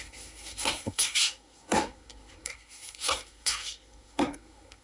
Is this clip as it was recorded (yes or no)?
no